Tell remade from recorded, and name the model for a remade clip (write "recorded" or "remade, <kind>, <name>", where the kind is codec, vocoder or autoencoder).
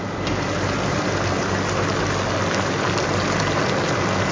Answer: recorded